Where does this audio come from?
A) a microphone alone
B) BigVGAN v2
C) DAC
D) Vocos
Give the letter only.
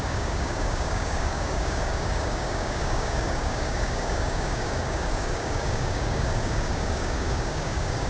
C